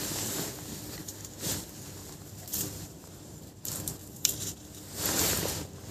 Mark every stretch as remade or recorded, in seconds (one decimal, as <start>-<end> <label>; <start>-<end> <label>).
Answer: 0.0-1.0 recorded; 1.0-4.5 remade; 4.5-5.9 recorded